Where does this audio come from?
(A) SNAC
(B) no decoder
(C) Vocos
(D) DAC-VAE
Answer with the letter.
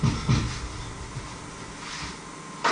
B